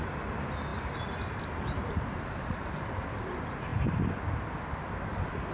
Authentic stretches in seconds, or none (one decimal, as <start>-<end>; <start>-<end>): 0.0-5.5